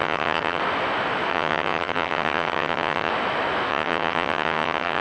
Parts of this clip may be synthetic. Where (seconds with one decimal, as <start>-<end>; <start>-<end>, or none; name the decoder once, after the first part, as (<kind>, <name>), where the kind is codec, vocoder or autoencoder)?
0.0-0.6 (vocoder, HiFi-GAN); 1.3-3.1; 3.7-5.0